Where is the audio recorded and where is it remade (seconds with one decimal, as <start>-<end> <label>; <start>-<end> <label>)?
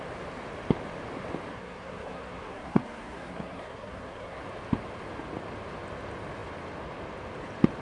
0.0-1.5 recorded; 1.5-4.4 remade; 4.4-7.8 recorded